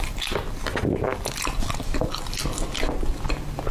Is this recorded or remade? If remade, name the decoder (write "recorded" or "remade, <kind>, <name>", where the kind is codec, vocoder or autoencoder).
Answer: recorded